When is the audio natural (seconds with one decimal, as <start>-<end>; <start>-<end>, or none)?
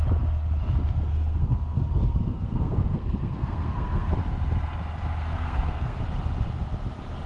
0.0-1.1; 4.1-5.2; 6.0-7.3